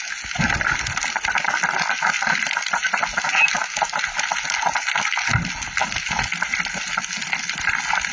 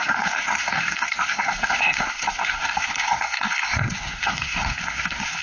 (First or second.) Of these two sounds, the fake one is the second